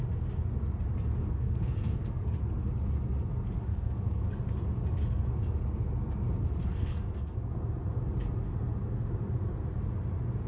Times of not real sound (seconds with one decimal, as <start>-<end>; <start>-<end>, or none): 1.2-2.4; 3.7-4.2; 6.7-7.3